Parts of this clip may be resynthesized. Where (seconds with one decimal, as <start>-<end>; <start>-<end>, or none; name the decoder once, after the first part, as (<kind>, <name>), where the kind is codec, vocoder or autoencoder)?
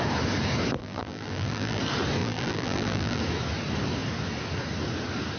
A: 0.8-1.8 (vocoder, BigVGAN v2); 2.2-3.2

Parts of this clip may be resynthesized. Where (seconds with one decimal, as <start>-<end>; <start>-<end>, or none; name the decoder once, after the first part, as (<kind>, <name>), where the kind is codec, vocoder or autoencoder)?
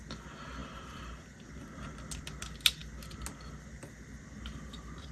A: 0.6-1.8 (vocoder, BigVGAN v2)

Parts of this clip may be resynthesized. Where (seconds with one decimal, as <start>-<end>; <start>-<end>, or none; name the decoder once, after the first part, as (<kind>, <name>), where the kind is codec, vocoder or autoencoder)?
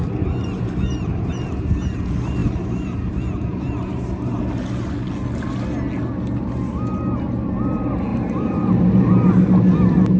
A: 0.0-1.3 (vocoder, BigVGAN v2); 2.4-4.4; 8.1-9.3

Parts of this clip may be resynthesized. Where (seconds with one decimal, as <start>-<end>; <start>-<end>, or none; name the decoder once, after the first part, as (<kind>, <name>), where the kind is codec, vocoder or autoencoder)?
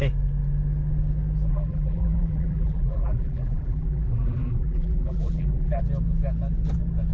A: 1.5-5.8 (vocoder, BigVGAN v2)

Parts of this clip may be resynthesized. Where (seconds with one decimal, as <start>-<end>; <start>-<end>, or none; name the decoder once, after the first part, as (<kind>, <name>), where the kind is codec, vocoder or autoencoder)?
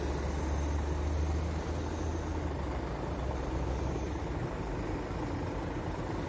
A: 2.1-5.0 (vocoder, BigVGAN v2)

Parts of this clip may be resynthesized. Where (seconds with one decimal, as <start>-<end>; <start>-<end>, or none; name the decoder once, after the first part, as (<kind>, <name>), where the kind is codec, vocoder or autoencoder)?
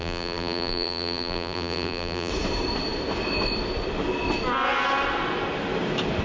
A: 0.0-2.3 (vocoder, BigVGAN v2)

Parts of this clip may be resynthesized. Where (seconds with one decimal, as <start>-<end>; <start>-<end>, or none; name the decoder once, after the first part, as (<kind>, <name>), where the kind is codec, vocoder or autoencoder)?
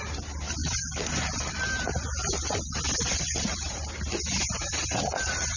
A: 0.6-4.0 (vocoder, BigVGAN v2)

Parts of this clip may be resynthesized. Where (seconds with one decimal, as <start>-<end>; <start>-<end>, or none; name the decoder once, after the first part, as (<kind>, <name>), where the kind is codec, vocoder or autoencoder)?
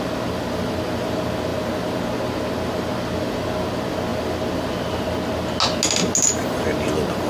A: none